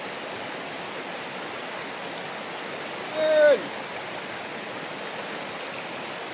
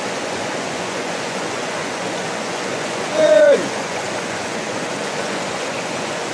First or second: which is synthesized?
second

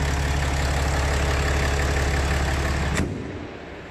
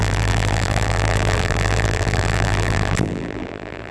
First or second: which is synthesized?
second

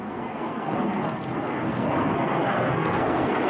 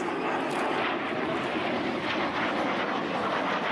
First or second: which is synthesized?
first